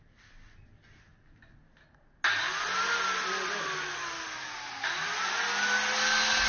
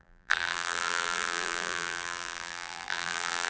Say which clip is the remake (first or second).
second